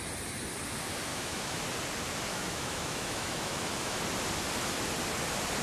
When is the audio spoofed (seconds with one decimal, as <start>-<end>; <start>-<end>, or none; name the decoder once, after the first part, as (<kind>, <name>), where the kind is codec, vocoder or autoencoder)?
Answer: 1.1-1.6 (autoencoder, DAC-VAE); 2.3-4.0